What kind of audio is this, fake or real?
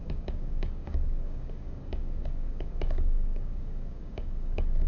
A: fake